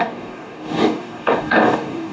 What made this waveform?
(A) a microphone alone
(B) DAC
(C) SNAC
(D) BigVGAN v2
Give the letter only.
B